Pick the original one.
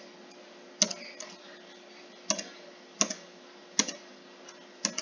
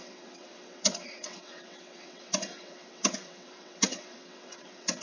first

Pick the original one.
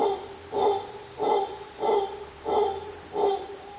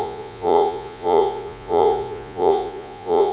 first